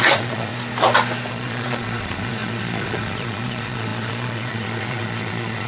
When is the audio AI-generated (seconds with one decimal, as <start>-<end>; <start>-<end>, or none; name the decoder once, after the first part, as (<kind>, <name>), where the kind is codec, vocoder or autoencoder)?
0.0-0.5 (vocoder, Vocos); 1.3-5.7

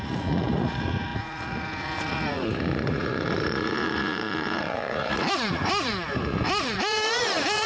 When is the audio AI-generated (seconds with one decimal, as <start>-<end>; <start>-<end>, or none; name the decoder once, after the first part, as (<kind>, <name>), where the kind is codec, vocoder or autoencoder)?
0.0-7.7 (vocoder, Vocos)